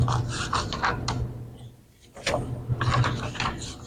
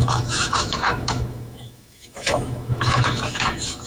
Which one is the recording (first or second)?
first